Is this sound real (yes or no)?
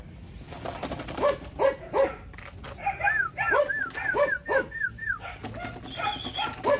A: yes